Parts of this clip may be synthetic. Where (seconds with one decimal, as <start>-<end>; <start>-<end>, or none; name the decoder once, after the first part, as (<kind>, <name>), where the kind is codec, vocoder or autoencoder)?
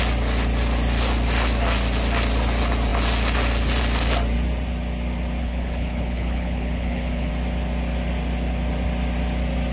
5.4-7.3 (codec, HILCodec)